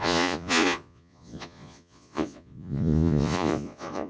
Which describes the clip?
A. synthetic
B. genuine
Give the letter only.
A